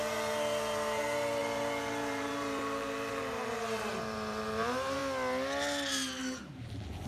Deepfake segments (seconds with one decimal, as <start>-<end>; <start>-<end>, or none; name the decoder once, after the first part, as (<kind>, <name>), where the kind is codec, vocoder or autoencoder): 0.0-5.0 (vocoder, BigVGAN v2); 6.2-7.1